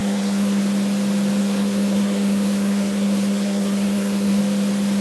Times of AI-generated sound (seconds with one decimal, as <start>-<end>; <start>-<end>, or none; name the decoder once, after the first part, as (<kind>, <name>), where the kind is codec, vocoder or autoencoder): 0.0-0.6 (codec, SNAC); 1.4-4.4